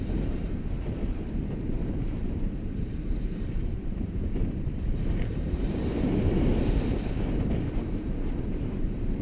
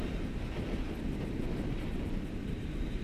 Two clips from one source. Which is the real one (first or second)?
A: second